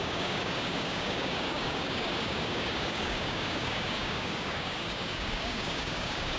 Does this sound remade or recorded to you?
remade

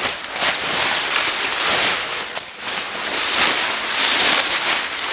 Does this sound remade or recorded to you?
recorded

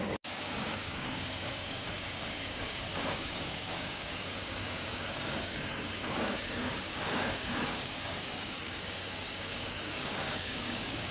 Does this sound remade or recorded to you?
remade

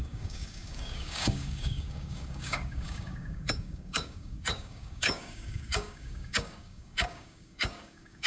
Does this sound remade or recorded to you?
remade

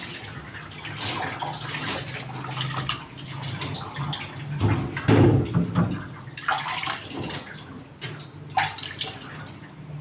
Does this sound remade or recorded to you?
recorded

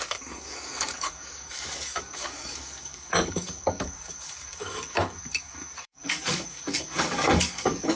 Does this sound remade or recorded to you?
remade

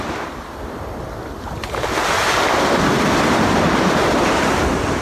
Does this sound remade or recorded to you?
recorded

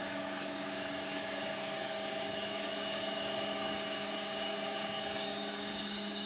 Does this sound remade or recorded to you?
remade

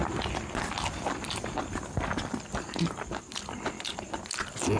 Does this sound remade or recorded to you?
recorded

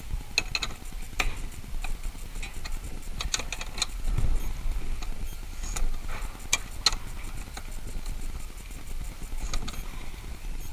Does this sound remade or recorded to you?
recorded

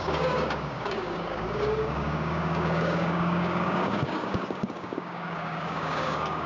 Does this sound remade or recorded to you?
remade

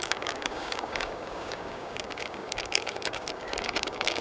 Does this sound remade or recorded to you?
remade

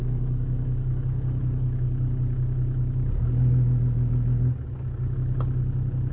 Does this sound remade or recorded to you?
recorded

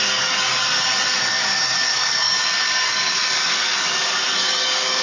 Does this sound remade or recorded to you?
remade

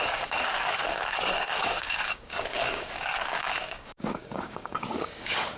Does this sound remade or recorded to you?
remade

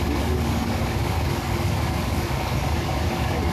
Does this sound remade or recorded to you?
remade